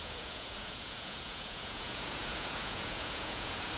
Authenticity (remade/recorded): remade